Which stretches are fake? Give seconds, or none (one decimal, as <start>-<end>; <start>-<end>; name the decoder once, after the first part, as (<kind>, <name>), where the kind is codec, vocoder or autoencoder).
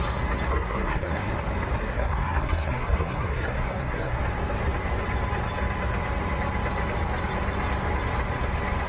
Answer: 0.5-1.3 (codec, SNAC); 1.8-4.2